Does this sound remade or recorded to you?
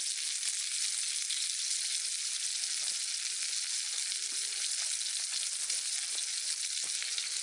recorded